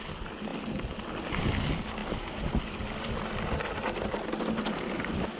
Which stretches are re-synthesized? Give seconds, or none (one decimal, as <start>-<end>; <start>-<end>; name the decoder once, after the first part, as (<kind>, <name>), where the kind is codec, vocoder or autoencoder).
none